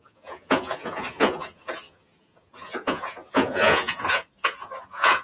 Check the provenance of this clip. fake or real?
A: fake